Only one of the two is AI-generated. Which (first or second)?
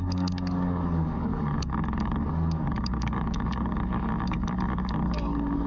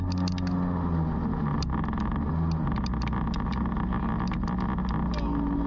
first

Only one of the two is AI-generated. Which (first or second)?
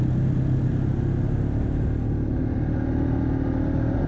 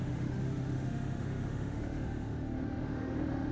second